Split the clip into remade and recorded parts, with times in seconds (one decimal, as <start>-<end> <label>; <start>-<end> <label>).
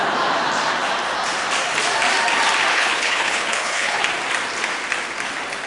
0.0-2.7 recorded; 2.7-4.0 remade; 4.0-5.7 recorded